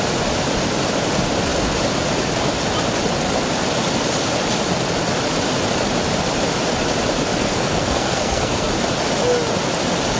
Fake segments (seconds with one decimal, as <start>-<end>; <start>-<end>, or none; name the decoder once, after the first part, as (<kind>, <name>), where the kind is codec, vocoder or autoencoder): 7.4-8.7 (codec, SNAC)